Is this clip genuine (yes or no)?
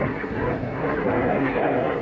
no